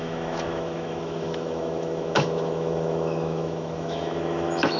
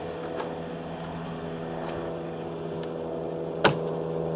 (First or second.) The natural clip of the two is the second